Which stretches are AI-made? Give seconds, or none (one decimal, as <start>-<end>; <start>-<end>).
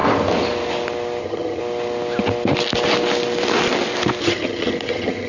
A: 1.2-1.6; 4.2-5.3